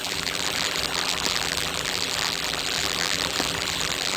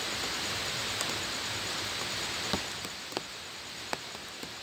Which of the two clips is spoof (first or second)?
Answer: first